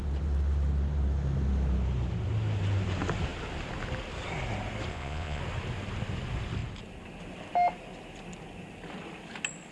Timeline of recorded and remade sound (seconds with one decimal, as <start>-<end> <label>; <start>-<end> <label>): 0.0-4.9 recorded; 4.9-5.4 remade; 5.4-9.7 recorded